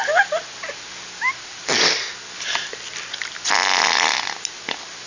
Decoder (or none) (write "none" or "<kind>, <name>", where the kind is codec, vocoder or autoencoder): none